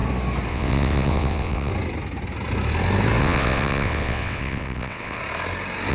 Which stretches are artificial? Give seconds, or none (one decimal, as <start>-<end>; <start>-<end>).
0.5-1.7; 3.2-5.2